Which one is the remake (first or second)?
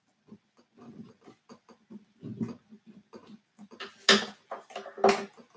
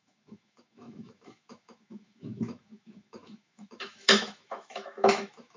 second